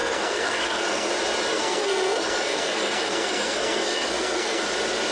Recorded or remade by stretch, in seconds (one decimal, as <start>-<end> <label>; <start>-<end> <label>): 0.0-1.1 remade; 1.1-1.5 recorded; 1.5-4.6 remade; 4.6-5.1 recorded